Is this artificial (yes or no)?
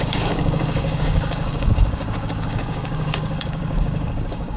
yes